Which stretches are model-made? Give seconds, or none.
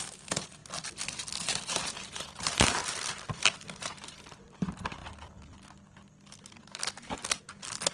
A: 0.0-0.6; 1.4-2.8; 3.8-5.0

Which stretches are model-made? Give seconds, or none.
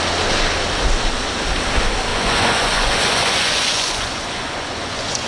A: 2.1-5.3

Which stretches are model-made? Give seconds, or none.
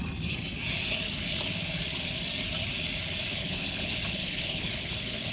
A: 3.3-5.3